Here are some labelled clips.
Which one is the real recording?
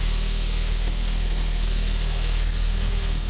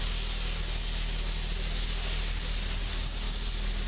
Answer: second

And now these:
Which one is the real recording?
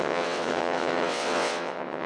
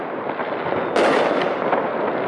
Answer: second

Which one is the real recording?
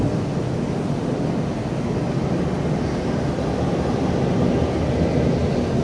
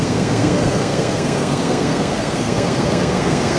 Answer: first